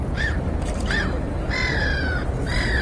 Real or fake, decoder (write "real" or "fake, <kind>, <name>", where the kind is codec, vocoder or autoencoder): real